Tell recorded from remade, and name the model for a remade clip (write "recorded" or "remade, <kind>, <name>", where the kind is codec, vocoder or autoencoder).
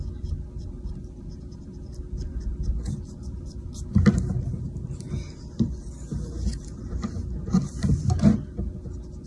recorded